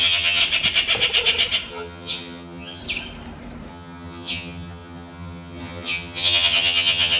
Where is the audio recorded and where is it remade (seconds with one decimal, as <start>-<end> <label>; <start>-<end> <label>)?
0.0-0.4 remade; 0.4-1.7 recorded; 1.7-2.8 remade; 2.8-3.7 recorded; 3.7-7.2 remade